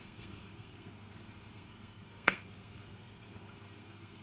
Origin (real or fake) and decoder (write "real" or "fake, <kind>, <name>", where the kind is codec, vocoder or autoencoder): fake, codec, SNAC